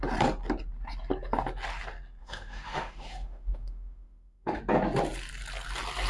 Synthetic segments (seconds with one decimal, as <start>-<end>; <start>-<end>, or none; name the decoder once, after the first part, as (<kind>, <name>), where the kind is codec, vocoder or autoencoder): 2.2-4.6 (autoencoder, DAC-VAE)